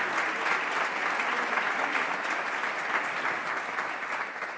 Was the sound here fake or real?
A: real